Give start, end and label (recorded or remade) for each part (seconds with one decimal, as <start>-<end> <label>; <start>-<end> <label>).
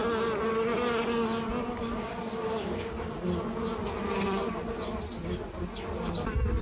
0.0-1.8 recorded; 1.8-3.0 remade; 3.0-6.6 recorded